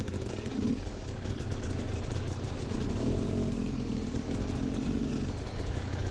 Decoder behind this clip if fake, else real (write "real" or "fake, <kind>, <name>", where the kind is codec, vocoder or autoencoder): fake, codec, DAC